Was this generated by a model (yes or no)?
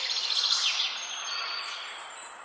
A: no